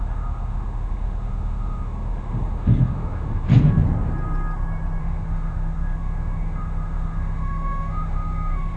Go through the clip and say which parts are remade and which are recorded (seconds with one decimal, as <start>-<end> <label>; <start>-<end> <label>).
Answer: 0.0-3.5 remade; 3.5-5.0 recorded; 5.0-8.8 remade